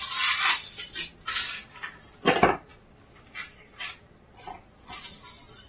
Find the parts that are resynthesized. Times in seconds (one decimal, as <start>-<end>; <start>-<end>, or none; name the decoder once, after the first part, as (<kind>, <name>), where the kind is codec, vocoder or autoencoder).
0.0-5.7 (vocoder, BigVGAN v2)